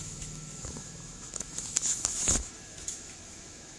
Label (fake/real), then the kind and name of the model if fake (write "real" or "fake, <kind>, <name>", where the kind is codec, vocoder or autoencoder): fake, autoencoder, DAC-VAE